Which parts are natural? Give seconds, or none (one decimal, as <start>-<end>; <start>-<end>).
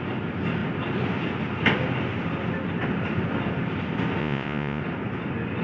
0.0-4.2; 4.8-5.6